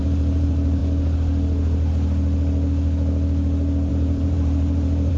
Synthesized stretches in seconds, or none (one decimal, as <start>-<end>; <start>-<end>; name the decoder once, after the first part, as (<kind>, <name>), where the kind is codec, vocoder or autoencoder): 0.0-0.8 (vocoder, BigVGAN v2); 3.9-5.2